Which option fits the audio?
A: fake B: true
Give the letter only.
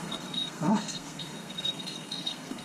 A